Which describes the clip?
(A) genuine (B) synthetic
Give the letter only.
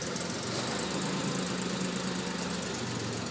A